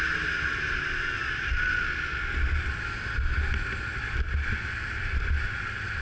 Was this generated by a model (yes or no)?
no